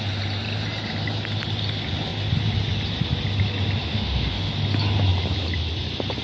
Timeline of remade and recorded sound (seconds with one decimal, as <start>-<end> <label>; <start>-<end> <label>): 0.0-3.9 recorded; 3.9-4.5 remade; 4.5-6.2 recorded